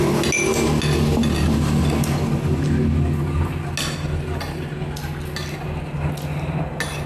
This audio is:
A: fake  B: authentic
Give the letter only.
B